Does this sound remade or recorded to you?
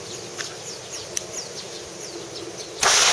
recorded